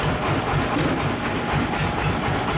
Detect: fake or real real